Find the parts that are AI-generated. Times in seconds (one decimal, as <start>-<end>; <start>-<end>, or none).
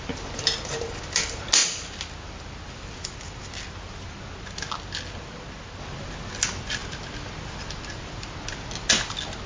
none